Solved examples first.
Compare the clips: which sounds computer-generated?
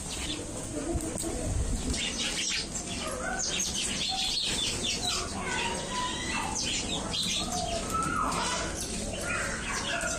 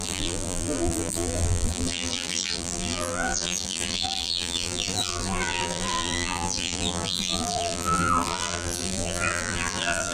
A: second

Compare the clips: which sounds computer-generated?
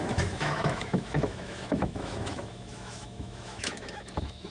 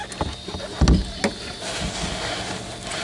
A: first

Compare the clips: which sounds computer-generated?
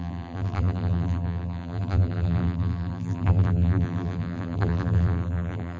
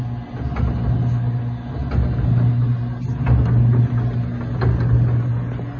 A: first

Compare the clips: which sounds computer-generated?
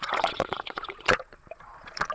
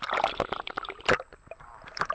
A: first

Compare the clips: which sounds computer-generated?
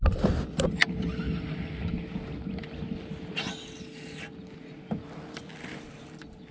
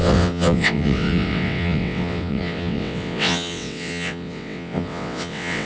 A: second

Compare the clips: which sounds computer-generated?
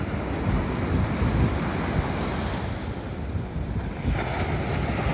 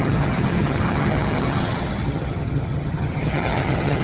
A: second